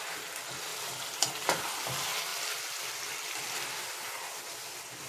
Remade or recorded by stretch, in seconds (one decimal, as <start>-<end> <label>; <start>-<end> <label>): 0.0-0.7 recorded; 0.7-1.8 remade; 1.8-2.3 recorded; 2.3-5.1 remade